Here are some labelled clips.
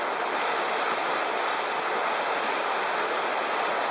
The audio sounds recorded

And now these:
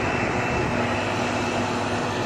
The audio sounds recorded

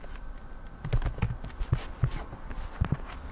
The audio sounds recorded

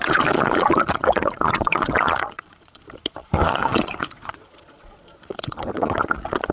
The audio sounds remade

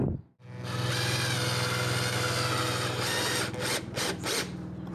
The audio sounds recorded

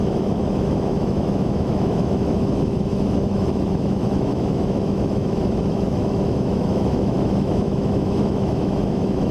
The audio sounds remade